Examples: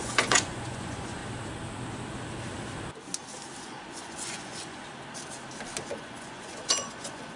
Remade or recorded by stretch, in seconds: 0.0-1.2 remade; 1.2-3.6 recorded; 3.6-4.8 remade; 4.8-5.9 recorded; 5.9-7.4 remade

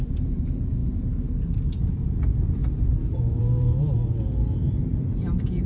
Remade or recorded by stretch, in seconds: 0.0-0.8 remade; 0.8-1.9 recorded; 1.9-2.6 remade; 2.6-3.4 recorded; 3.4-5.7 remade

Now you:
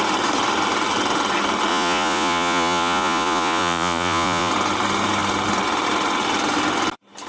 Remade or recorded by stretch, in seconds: 0.0-1.7 recorded; 1.7-4.5 remade; 4.5-7.3 recorded

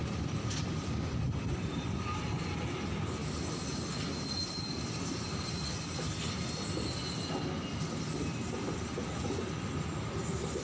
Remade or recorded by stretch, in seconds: 0.0-10.6 recorded

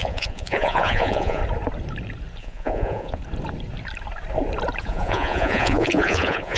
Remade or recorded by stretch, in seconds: 0.0-1.4 remade; 1.4-2.4 recorded; 2.4-3.2 remade; 3.2-4.8 recorded; 4.8-6.6 remade

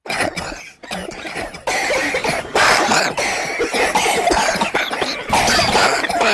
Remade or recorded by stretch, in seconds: 0.0-6.3 recorded

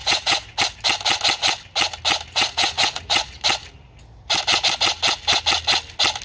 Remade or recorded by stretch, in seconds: 0.0-0.6 remade; 0.6-2.3 recorded; 2.3-3.4 remade; 3.4-6.2 recorded